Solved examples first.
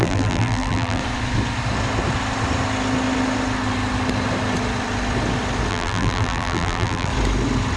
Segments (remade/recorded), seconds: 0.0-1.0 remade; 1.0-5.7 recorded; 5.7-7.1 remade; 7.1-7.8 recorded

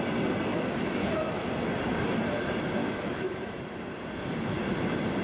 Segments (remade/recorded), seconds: 0.0-0.5 recorded; 0.5-1.5 remade; 1.5-2.8 recorded; 2.8-3.6 remade; 3.6-5.2 recorded

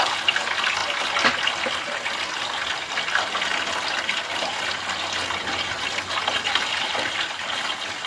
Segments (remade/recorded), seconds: 0.0-6.6 recorded; 6.6-7.6 remade; 7.6-8.1 recorded

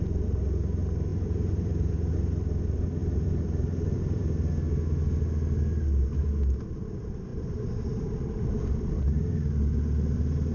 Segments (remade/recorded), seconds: 0.0-1.1 recorded; 1.1-2.1 remade; 2.1-3.0 recorded; 3.0-4.5 remade; 4.5-10.5 recorded

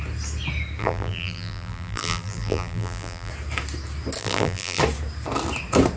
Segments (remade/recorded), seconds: 0.0-0.8 recorded; 0.8-3.3 remade; 3.3-4.2 recorded; 4.2-4.8 remade; 4.8-6.0 recorded

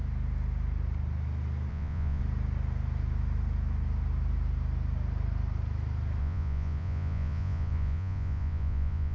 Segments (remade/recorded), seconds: 0.0-1.7 recorded; 1.7-2.2 remade; 2.2-6.2 recorded; 6.2-9.1 remade